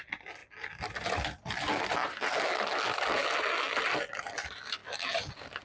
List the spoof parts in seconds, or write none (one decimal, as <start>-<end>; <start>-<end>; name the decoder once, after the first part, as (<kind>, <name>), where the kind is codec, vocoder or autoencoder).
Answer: none